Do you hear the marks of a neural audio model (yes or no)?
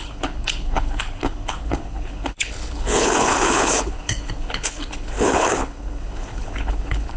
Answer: yes